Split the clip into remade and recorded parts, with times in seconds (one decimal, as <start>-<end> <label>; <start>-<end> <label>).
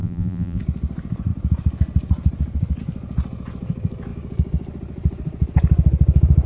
0.0-0.6 remade; 0.6-6.5 recorded